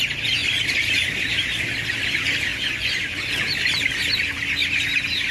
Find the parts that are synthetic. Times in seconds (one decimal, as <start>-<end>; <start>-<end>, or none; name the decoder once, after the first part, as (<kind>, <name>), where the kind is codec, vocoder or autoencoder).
2.5-3.3 (vocoder, Vocos)